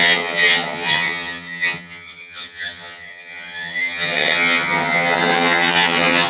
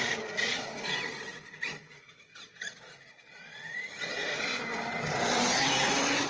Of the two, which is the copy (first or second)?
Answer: first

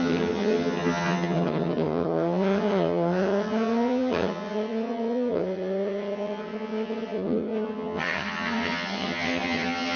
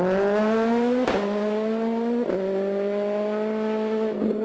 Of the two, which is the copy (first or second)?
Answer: first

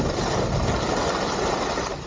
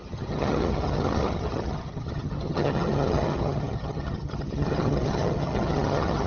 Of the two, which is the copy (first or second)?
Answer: second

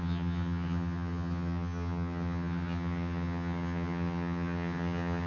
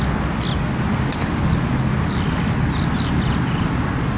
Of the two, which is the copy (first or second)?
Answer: first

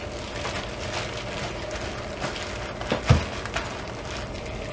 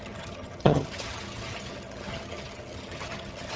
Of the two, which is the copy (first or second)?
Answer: second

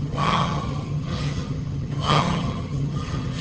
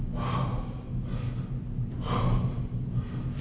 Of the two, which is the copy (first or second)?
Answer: first